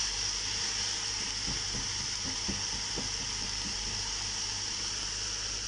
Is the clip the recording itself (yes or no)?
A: yes